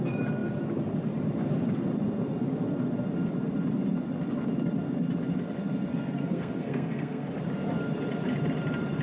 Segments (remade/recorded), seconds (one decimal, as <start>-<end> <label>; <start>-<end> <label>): 0.0-5.9 recorded; 5.9-7.3 remade; 7.3-9.0 recorded